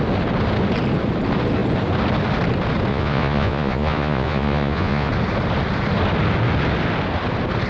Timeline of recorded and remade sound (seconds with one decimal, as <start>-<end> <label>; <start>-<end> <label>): 0.0-2.9 recorded; 2.9-5.1 remade; 5.1-7.7 recorded